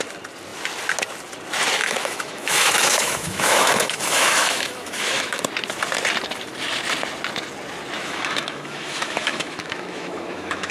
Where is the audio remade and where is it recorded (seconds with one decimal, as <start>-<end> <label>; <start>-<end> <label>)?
0.0-1.8 recorded; 1.8-5.4 remade; 5.4-8.0 recorded; 8.0-10.7 remade